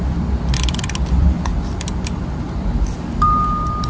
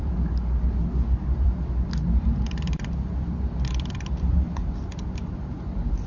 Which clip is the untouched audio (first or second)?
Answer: first